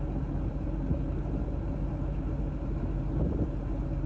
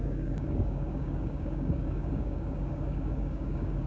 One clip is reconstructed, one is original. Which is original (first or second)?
first